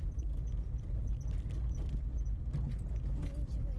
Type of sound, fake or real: real